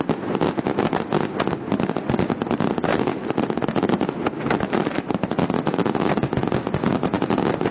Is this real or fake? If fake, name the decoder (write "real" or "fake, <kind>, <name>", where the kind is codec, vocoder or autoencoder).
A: real